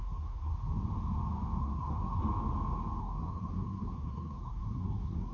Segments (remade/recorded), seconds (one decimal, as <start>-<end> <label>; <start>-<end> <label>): 0.0-0.5 remade; 0.5-1.6 recorded; 1.6-2.2 remade; 2.2-3.0 recorded; 3.0-5.3 remade